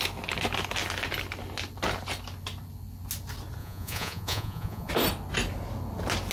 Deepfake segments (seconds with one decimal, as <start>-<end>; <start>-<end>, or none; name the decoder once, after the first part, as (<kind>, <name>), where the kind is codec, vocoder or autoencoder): 3.6-4.9 (vocoder, Vocos)